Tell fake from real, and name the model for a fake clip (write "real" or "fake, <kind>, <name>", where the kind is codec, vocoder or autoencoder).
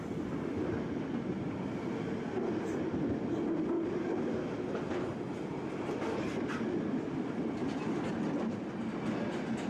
real